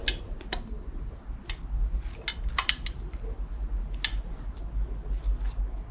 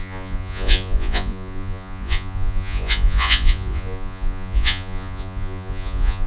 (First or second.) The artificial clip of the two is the second